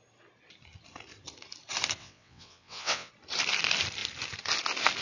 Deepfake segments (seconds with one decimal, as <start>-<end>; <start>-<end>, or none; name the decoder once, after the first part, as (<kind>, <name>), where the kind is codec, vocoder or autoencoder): 2.0-3.1 (vocoder, WaveNeXt)